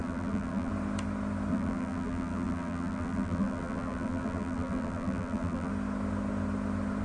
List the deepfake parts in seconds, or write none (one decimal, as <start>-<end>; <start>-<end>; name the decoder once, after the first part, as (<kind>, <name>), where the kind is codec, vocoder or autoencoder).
0.0-0.7 (vocoder, BigVGAN v2); 1.5-5.7